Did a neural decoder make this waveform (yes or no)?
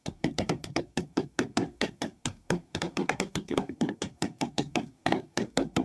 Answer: yes